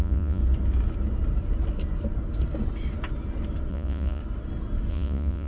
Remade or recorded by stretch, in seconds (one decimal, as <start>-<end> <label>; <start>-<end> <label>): 0.0-0.4 remade; 0.4-3.7 recorded; 3.7-4.2 remade; 4.2-4.9 recorded; 4.9-5.5 remade